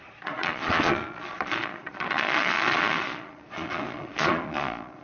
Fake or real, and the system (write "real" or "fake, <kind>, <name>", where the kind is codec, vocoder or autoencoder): fake, vocoder, Vocos